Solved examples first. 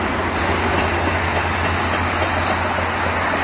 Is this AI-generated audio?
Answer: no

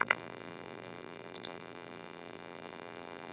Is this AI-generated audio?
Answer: yes